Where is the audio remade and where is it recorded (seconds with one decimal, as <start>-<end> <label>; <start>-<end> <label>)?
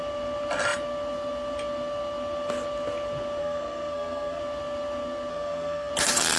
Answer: 0.0-3.4 recorded; 3.4-4.4 remade; 4.4-5.3 recorded; 5.3-5.9 remade; 5.9-6.4 recorded